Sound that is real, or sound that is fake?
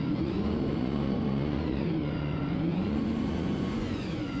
fake